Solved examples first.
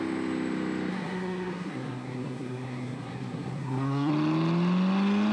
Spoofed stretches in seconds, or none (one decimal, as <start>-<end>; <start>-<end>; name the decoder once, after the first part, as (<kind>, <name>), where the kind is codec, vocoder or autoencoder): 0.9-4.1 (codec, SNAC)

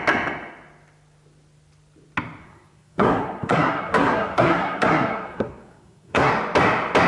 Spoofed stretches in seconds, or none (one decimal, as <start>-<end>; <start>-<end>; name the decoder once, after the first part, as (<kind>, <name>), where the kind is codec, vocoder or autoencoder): 2.4-6.3 (codec, SNAC)

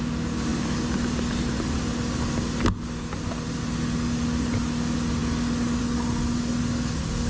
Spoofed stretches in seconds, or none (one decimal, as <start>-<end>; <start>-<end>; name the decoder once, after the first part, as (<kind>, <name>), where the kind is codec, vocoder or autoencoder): none

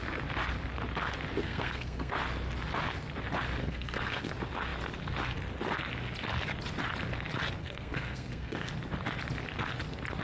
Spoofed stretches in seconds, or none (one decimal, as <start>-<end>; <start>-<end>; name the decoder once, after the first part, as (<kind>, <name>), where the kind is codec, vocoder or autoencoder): 1.4-2.1 (codec, SNAC); 3.6-4.3; 7.6-8.7

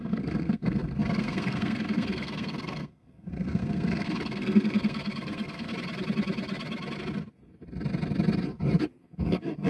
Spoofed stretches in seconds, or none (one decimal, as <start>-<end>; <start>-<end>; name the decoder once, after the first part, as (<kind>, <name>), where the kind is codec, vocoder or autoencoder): 0.0-5.7 (codec, SNAC); 9.0-9.7

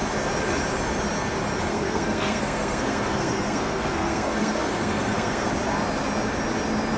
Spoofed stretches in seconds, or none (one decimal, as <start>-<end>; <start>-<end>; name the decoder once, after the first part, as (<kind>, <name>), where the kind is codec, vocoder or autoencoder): 1.7-5.5 (codec, SNAC)